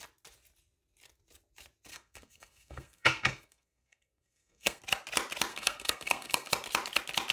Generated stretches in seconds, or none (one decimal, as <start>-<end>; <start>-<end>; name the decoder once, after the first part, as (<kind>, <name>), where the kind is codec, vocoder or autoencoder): 1.9-4.8 (codec, SNAC); 5.5-6.5